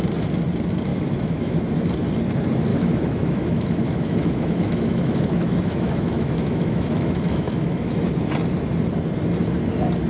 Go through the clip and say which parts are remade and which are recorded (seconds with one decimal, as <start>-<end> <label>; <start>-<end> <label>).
0.0-0.9 recorded; 0.9-1.6 remade; 1.6-2.7 recorded; 2.7-7.9 remade; 7.9-10.1 recorded